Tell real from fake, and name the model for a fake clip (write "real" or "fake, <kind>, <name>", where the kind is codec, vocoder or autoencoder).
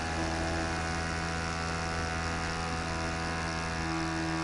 real